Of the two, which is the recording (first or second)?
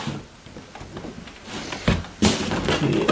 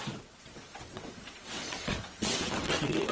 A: first